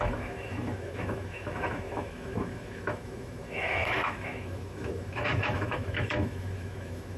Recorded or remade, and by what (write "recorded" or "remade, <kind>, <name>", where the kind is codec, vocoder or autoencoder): remade, autoencoder, DAC-VAE